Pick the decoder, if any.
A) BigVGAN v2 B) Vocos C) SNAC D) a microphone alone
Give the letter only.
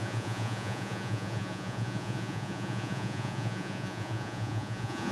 B